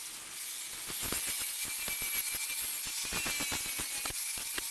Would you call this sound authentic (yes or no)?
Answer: yes